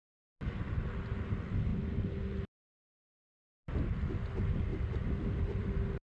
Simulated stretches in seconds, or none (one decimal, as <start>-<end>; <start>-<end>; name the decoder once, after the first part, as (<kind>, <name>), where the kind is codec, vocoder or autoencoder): 4.7-6.0 (vocoder, BigVGAN v2)